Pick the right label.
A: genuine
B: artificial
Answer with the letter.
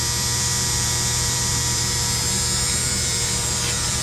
B